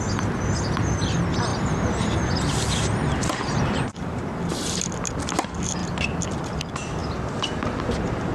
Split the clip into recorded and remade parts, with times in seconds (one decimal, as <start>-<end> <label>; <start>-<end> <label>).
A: 0.0-1.5 recorded; 1.5-4.8 remade; 4.8-8.3 recorded